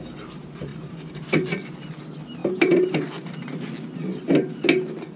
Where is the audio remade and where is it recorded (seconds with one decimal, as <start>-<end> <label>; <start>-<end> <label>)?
0.0-2.4 recorded; 2.4-3.7 remade; 3.7-5.2 recorded